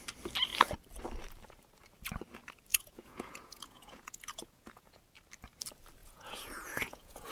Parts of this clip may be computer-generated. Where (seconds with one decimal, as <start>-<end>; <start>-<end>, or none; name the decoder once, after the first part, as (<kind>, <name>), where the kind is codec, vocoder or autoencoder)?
2.7-5.0 (vocoder, Vocos); 6.0-7.3